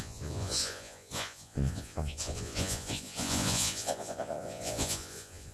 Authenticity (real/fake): fake